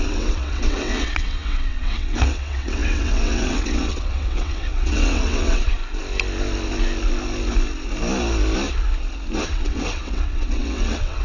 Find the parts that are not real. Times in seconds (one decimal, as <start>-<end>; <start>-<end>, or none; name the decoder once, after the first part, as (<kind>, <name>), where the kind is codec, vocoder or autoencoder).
0.0-5.8 (vocoder, WaveNeXt); 9.5-11.2